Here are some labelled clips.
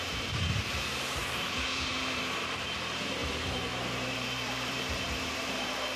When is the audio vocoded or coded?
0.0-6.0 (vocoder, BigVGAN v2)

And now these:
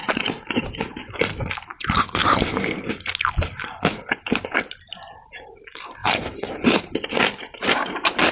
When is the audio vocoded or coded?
0.0-1.5 (vocoder, BigVGAN v2); 6.0-6.8